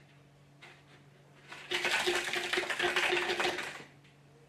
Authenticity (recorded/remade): recorded